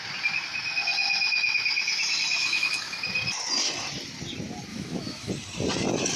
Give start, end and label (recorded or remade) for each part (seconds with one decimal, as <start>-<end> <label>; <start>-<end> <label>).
0.0-2.4 recorded; 2.4-3.0 remade; 3.0-4.7 recorded; 4.7-5.3 remade; 5.3-6.2 recorded